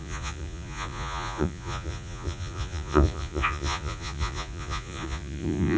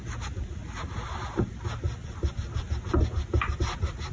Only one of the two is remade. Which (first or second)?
first